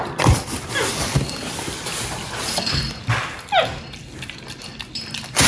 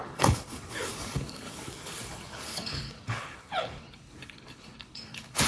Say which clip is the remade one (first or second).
second